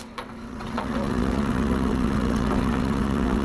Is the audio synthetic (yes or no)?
yes